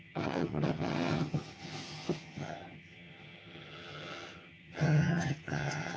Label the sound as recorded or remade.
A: remade